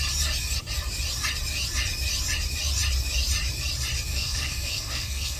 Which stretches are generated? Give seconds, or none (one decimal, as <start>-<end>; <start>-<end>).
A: 4.1-5.4